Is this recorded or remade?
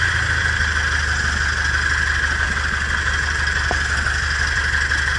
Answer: recorded